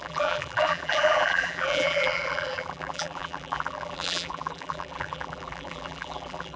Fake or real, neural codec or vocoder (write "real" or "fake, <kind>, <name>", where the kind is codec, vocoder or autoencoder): fake, vocoder, BigVGAN v2